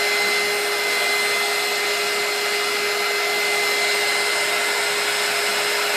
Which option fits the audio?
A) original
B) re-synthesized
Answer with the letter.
A